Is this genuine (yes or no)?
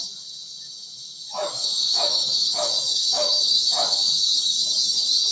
no